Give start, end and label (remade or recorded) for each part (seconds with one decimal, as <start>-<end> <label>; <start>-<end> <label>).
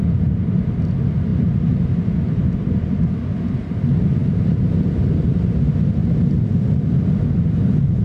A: 0.0-8.0 recorded